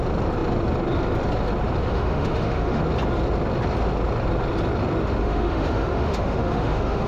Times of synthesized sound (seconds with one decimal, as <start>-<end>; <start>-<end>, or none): 1.9-2.8; 5.2-7.1